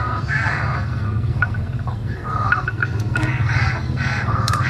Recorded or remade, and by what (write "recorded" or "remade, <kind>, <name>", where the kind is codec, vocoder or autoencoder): remade, codec, SNAC